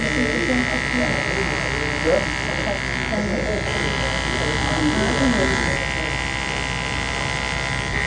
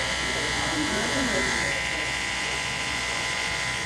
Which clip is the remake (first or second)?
second